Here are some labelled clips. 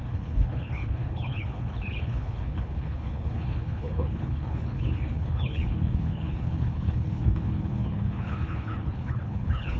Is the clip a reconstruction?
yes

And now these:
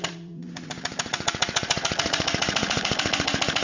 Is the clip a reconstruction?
yes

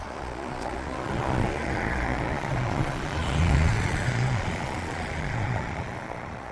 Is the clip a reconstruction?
yes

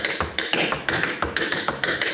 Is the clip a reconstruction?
yes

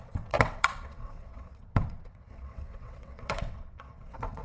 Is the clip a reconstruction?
yes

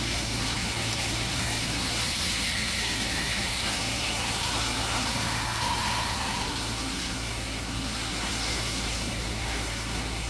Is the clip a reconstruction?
yes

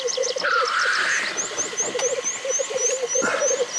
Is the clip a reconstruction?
no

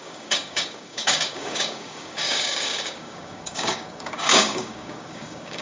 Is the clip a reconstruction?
yes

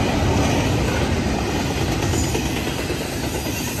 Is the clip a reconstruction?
no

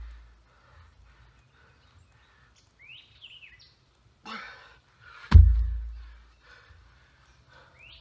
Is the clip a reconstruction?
no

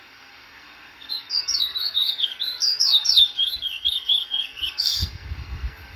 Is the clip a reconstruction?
yes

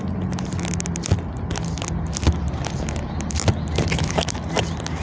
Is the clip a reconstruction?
no